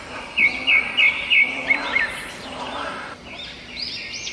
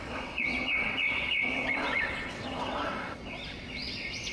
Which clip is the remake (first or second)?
second